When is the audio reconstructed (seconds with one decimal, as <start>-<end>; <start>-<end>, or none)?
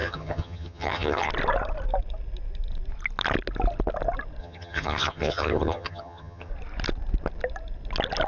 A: 0.0-1.3; 4.4-6.5